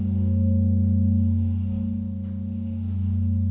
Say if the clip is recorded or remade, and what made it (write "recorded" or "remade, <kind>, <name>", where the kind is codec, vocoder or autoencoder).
recorded